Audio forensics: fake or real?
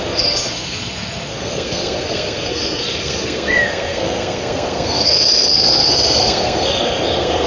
fake